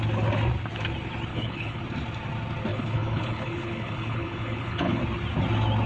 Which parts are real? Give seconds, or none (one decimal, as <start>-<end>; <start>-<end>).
0.0-1.3; 1.8-2.7; 5.0-5.9